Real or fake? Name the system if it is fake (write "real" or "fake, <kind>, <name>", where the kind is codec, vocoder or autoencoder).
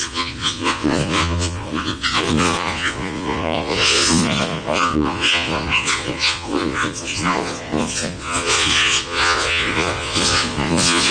fake, vocoder, Vocos